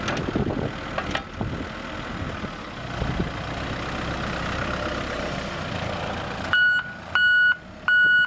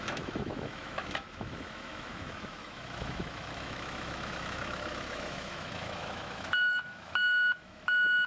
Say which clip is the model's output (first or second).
second